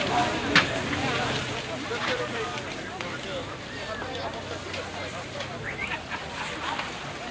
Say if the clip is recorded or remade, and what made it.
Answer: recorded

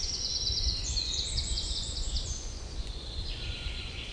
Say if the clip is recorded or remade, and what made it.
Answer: remade, vocoder, Vocos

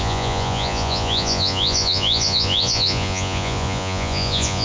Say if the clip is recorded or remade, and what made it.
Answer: remade, vocoder, Vocos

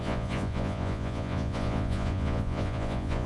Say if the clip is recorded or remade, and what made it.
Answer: remade, vocoder, Vocos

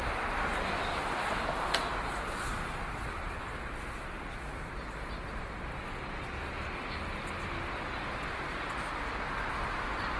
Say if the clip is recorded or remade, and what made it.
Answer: recorded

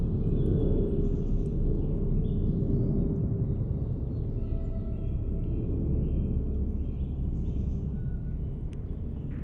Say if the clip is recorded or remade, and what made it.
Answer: recorded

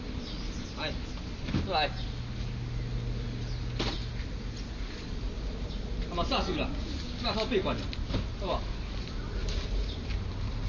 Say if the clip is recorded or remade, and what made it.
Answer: recorded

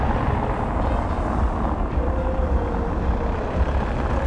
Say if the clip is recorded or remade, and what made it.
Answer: recorded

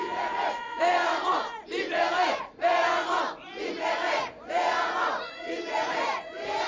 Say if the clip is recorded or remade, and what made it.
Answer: remade, vocoder, Vocos